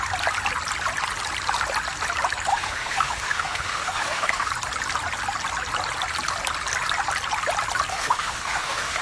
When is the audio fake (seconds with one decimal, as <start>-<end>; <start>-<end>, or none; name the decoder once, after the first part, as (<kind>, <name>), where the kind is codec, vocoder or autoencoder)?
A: 2.5-4.5 (autoencoder, DAC-VAE); 7.9-9.0